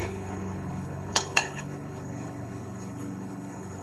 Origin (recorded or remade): remade